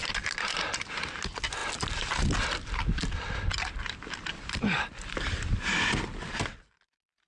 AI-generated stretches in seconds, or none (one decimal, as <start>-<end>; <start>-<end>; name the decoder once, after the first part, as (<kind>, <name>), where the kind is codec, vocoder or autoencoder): none